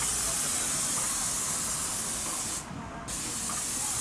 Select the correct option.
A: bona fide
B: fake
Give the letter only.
A